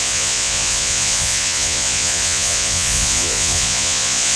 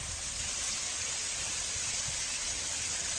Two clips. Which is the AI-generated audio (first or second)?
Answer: first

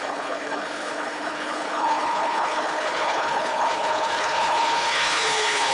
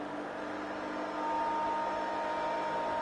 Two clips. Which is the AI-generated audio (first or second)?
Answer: first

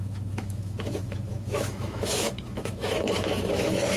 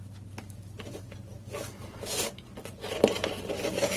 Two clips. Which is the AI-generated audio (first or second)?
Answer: first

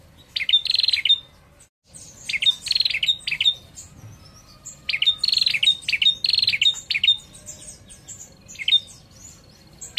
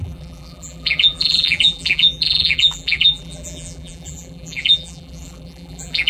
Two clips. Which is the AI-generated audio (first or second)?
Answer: second